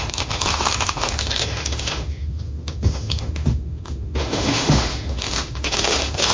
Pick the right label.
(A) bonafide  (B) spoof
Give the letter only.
B